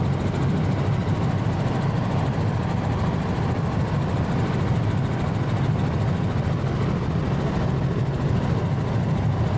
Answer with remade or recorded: recorded